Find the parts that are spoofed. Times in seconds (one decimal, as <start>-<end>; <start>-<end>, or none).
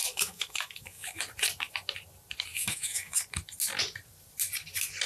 0.0-1.2; 2.5-3.2